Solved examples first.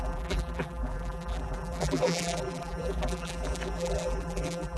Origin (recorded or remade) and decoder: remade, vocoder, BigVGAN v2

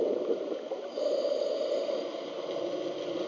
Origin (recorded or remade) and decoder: recorded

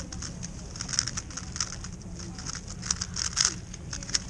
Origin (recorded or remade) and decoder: recorded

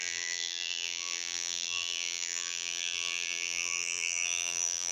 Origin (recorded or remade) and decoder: remade, vocoder, BigVGAN v2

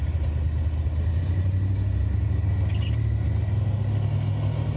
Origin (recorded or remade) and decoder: recorded